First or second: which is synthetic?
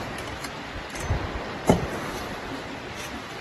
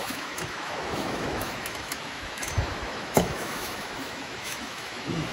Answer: second